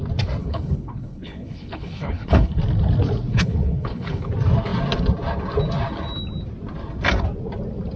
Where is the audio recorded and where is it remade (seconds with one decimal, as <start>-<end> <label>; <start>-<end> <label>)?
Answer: 0.0-0.4 recorded; 0.4-2.6 remade; 2.6-3.3 recorded; 3.3-4.3 remade; 4.3-8.0 recorded